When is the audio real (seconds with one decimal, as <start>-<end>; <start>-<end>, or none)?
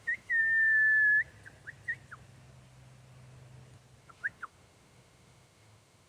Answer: 0.4-4.0